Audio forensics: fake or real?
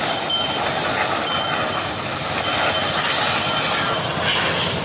real